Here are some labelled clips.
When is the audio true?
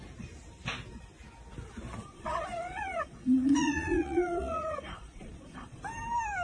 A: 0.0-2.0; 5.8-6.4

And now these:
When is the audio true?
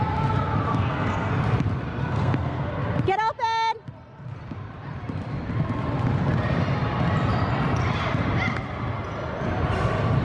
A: 0.0-0.7; 1.3-2.1; 2.7-10.2